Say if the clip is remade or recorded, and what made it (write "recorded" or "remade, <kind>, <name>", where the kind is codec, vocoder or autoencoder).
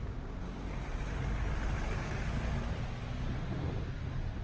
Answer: recorded